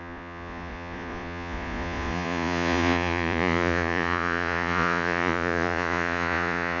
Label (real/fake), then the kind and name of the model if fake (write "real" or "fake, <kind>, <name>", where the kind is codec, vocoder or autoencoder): fake, vocoder, Vocos